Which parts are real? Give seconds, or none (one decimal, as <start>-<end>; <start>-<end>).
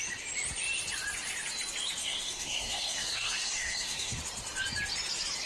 0.0-2.0; 4.2-5.5